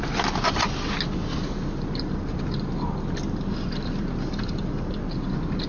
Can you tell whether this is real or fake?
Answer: real